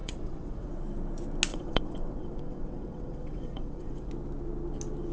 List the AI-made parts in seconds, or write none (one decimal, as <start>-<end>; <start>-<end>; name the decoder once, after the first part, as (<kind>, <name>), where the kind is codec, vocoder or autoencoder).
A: 0.0-0.7 (vocoder, WaveNeXt); 1.5-4.1